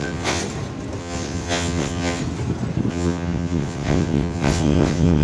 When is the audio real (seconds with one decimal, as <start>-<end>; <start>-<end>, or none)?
0.4-1.0; 2.2-2.9

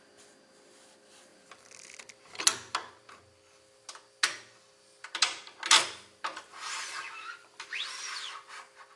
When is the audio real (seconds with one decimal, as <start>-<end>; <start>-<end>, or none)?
0.0-9.0

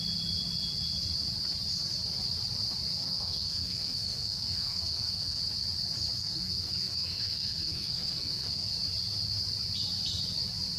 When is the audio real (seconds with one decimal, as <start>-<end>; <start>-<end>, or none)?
0.0-2.9; 5.4-6.2; 8.7-10.8